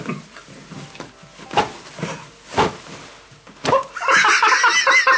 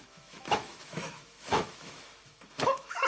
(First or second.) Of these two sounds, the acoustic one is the first